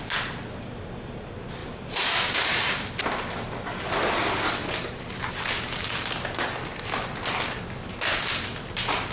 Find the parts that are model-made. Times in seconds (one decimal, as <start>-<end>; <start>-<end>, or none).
1.6-2.9; 4.6-6.1